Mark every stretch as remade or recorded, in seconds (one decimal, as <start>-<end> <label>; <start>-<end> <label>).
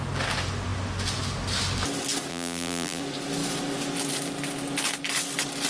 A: 0.0-2.3 recorded; 2.3-3.0 remade; 3.0-5.7 recorded